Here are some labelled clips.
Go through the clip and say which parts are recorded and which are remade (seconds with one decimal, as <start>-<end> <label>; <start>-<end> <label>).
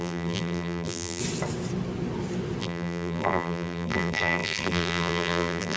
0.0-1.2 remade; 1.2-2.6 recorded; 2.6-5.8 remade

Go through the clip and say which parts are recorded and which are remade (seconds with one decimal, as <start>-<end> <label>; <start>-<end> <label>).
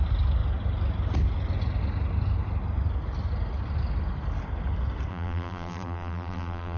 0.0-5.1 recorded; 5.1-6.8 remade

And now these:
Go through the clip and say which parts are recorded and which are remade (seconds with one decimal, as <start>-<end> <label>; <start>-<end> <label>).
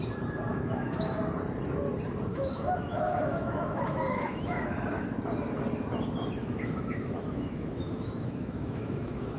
0.0-0.5 recorded; 0.5-1.2 remade; 1.2-2.3 recorded; 2.3-4.8 remade; 4.8-6.4 recorded; 6.4-9.4 remade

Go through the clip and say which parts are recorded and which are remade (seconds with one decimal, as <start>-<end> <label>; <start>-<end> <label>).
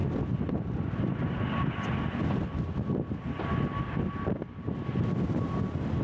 0.0-6.0 recorded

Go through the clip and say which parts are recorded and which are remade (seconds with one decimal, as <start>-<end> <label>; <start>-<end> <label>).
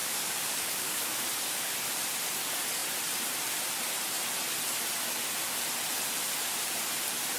0.0-1.2 remade; 1.2-7.4 recorded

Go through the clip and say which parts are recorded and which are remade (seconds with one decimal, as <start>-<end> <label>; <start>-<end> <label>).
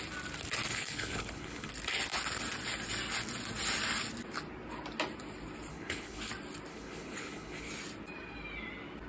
0.0-0.7 recorded; 0.7-1.7 remade; 1.7-5.7 recorded; 5.7-6.3 remade; 6.3-6.7 recorded; 6.7-7.7 remade; 7.7-9.1 recorded